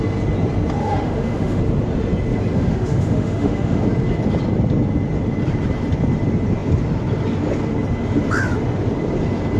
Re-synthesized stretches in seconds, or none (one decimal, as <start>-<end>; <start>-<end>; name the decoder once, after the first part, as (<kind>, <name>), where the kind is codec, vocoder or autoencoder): 0.8-1.6 (autoencoder, DAC-VAE); 2.5-3.8